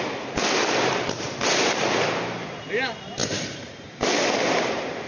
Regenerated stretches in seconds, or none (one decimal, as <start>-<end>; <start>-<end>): 3.2-3.7